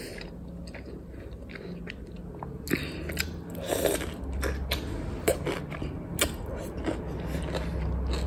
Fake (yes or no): no